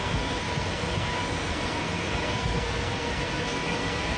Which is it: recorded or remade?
remade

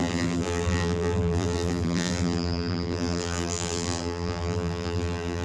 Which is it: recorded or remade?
remade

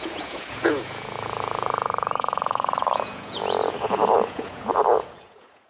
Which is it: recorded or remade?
remade